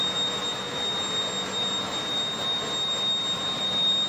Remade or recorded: recorded